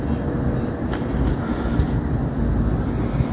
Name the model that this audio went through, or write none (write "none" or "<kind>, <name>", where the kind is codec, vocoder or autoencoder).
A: none